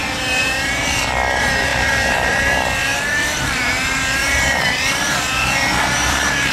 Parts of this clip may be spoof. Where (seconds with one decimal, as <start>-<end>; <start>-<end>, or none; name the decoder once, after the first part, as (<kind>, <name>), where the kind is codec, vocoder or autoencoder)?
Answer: 1.7-2.4 (vocoder, BigVGAN v2); 2.8-3.7; 4.2-5.7